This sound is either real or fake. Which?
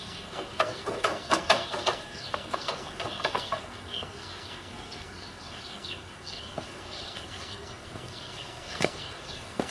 fake